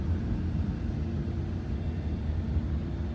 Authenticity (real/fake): real